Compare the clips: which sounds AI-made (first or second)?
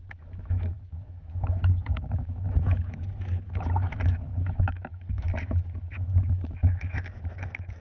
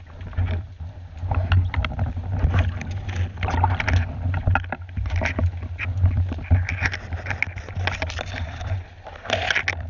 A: first